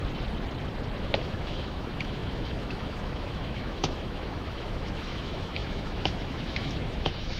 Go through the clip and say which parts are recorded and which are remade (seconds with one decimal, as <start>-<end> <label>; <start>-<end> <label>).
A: 0.0-1.0 recorded; 1.0-7.4 remade